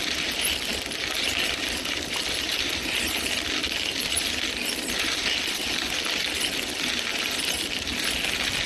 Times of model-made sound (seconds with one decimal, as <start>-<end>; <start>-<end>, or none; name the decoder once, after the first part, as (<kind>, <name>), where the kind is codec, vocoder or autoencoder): none